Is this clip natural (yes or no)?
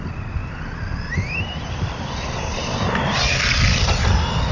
yes